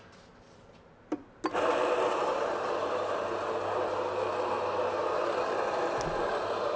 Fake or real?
real